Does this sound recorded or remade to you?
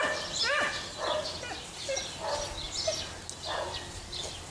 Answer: recorded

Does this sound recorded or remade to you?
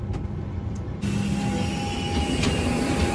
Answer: recorded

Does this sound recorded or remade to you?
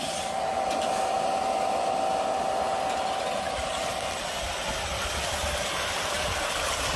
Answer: recorded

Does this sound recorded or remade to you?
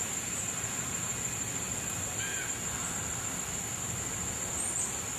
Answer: recorded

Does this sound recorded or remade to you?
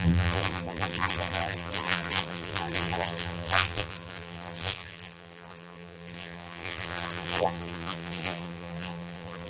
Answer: remade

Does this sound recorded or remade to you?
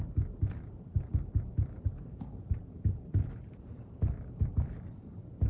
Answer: recorded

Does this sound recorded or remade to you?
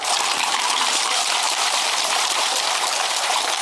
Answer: remade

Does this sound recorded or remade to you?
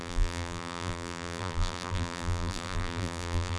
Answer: remade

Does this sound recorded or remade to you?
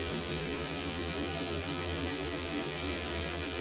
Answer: remade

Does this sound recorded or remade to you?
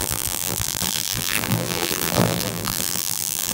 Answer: remade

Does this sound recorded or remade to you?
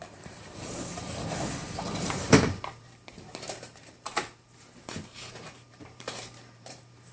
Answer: remade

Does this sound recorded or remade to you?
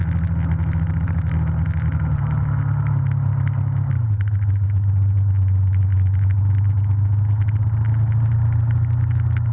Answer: recorded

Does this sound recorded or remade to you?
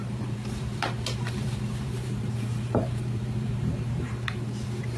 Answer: remade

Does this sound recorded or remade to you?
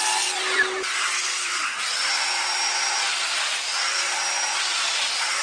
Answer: recorded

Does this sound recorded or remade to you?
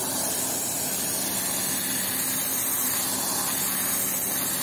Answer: recorded